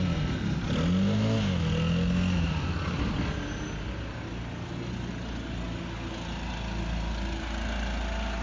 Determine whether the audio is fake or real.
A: real